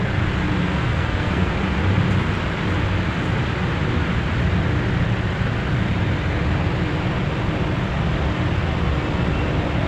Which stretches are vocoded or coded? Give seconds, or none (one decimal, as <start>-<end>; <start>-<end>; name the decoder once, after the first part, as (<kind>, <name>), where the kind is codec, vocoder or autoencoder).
0.6-1.5 (codec, SNAC)